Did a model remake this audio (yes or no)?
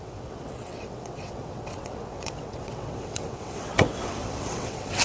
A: yes